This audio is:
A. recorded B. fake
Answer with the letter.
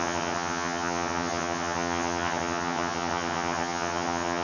B